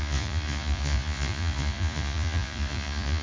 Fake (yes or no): yes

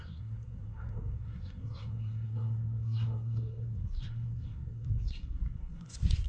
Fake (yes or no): yes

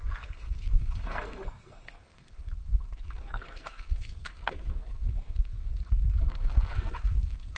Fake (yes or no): yes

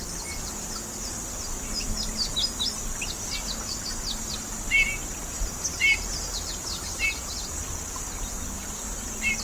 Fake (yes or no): no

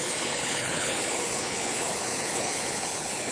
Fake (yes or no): yes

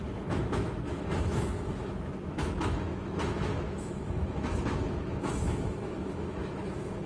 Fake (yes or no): yes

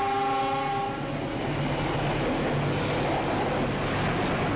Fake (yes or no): no